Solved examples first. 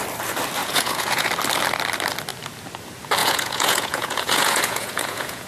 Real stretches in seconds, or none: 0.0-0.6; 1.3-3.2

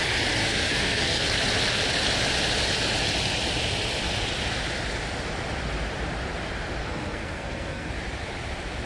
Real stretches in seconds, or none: 0.0-0.4; 1.2-6.8; 7.9-8.9